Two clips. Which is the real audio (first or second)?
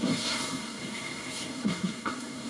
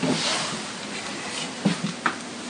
second